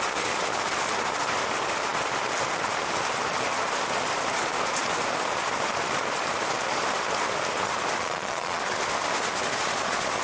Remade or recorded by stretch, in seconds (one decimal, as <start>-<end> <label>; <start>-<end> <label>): 0.0-8.0 recorded; 8.0-8.6 remade; 8.6-10.2 recorded